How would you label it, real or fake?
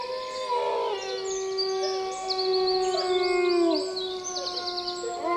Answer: real